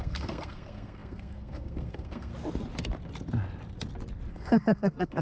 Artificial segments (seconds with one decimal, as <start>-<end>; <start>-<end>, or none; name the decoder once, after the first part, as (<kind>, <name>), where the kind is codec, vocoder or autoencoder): 0.0-2.3 (codec, SNAC); 4.3-5.2